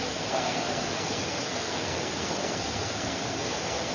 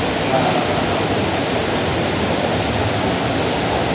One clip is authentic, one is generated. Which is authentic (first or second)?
second